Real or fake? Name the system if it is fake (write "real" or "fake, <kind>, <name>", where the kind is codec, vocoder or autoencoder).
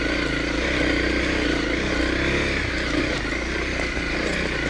real